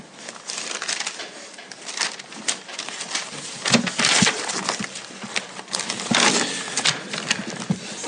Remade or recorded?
recorded